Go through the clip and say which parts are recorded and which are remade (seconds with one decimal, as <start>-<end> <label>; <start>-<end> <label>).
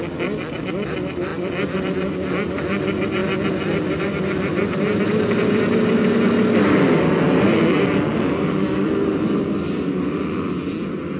0.0-11.2 recorded